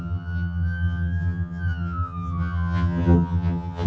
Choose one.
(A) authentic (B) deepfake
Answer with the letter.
B